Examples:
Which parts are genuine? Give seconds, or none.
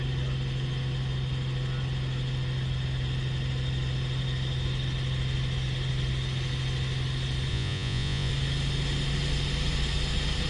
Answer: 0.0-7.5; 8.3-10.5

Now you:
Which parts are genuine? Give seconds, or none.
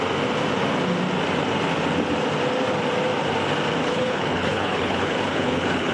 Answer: 0.0-3.8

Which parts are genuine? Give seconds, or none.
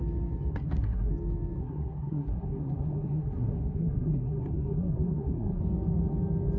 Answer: 0.0-0.5; 1.1-1.6; 5.6-6.6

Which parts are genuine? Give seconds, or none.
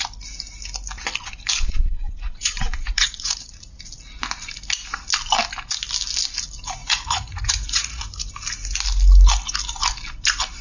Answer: 0.0-1.8; 3.8-6.8; 8.3-10.6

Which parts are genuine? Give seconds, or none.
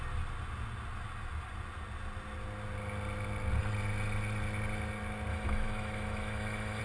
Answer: 0.0-5.3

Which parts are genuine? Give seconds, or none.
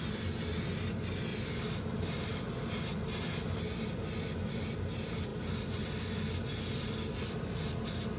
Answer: 0.0-1.3; 3.6-8.2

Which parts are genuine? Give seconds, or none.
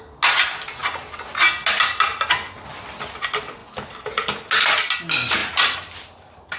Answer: 0.0-5.4